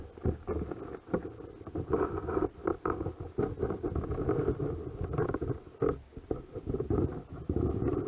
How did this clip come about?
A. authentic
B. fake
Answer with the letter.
A